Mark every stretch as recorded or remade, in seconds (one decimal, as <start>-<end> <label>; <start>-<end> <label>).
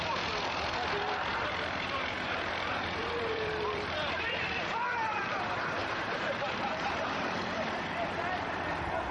0.0-1.3 recorded; 1.3-5.2 remade; 5.2-5.8 recorded; 5.8-8.1 remade; 8.1-9.1 recorded